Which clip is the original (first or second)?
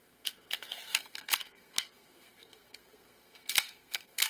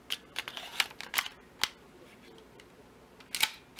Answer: second